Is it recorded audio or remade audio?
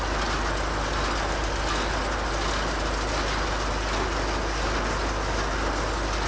recorded